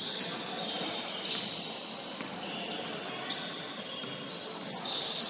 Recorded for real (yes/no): yes